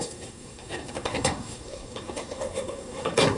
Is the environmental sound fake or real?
fake